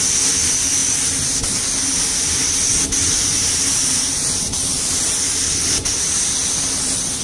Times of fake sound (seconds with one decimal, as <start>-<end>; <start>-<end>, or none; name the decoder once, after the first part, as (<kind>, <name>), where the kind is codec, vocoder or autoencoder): 3.0-5.0 (vocoder, BigVGAN v2)